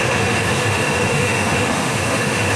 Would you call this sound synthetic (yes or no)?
yes